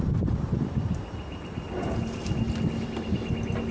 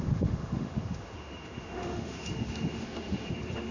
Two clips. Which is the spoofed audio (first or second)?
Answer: second